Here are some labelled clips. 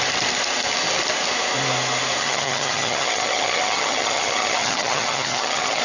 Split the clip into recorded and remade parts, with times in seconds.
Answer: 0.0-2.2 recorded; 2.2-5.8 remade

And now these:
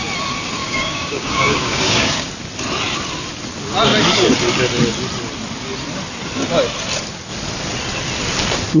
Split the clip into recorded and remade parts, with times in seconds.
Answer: 0.0-0.6 recorded; 0.6-2.3 remade; 2.3-8.8 recorded

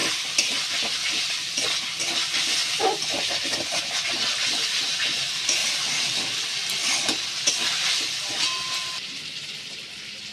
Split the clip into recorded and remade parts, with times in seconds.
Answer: 0.0-3.8 remade; 3.8-5.6 recorded; 5.6-9.2 remade; 9.2-10.3 recorded